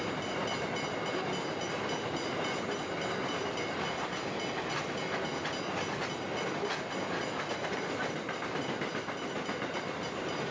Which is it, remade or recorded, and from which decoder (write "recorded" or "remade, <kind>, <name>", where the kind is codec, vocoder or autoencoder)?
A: recorded